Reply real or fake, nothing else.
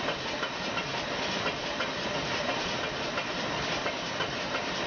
fake